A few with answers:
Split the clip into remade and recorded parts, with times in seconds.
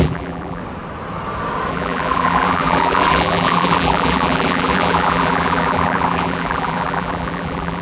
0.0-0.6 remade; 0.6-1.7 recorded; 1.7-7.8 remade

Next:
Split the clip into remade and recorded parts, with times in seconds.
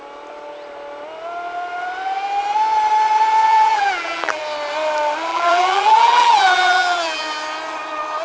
0.0-3.5 recorded; 3.5-4.4 remade; 4.4-5.3 recorded; 5.3-7.2 remade; 7.2-8.2 recorded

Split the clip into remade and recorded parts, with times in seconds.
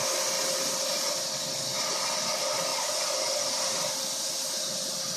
0.0-0.9 remade; 0.9-1.9 recorded; 1.9-2.7 remade; 2.7-4.3 recorded; 4.3-5.2 remade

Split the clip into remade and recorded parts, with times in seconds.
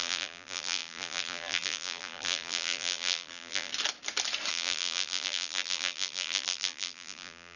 0.0-3.7 remade; 3.7-4.5 recorded; 4.5-7.6 remade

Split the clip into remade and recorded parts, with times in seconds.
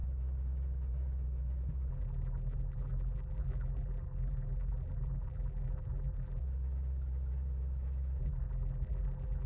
0.0-1.9 recorded; 1.9-6.4 remade; 6.4-8.2 recorded; 8.2-9.5 remade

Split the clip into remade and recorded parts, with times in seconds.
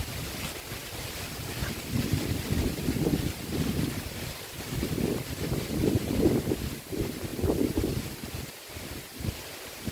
0.0-7.3 remade; 7.3-9.9 recorded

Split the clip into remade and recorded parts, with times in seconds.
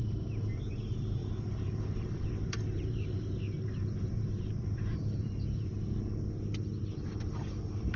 0.0-5.7 remade; 5.7-6.9 recorded; 6.9-8.0 remade